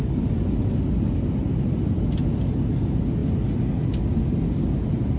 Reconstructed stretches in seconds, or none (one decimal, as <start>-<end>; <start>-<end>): none